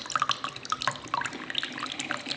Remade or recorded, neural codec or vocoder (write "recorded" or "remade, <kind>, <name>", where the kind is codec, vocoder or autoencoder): recorded